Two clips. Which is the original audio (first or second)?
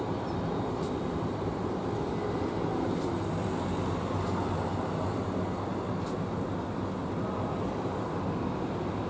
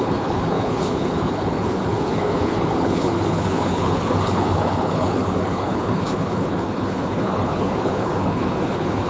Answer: first